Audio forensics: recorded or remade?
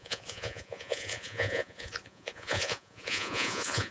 remade